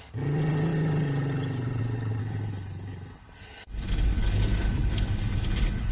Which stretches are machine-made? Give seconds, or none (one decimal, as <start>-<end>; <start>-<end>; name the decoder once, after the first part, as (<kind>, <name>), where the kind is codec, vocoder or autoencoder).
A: 2.2-5.9 (codec, HILCodec)